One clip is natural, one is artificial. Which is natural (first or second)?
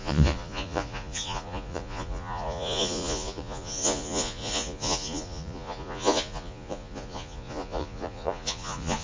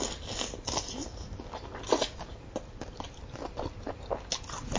second